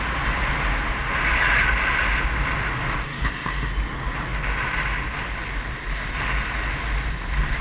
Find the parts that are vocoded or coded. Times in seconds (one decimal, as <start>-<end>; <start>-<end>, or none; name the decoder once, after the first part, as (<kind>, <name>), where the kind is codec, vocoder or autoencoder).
3.0-3.7 (autoencoder, DAC-VAE)